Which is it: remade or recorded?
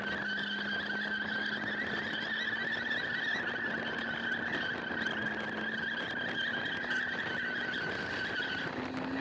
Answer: recorded